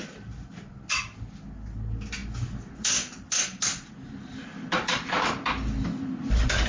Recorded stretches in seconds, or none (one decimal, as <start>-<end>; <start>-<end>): 0.0-4.3; 4.9-6.7